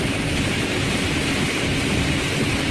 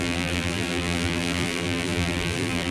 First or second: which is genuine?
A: first